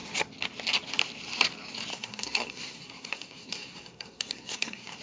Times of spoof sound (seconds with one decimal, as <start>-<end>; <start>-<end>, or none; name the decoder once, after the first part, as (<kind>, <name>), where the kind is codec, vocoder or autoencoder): 1.9-5.0 (codec, SNAC)